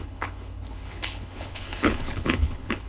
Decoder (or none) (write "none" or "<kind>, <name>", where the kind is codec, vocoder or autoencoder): codec, HILCodec